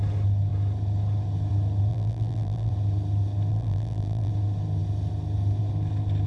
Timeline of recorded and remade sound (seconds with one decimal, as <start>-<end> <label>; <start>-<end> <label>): 0.0-1.9 recorded; 1.9-2.7 remade; 2.7-3.5 recorded; 3.5-4.3 remade; 4.3-6.3 recorded